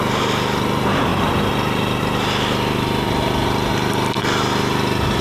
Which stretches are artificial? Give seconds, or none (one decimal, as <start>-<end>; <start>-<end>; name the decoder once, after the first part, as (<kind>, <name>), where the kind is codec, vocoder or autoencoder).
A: none